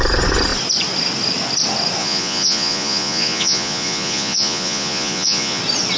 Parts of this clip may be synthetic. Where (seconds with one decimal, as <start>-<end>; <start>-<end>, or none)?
2.0-5.6